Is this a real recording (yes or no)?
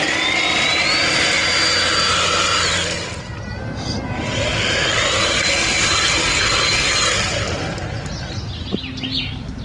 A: yes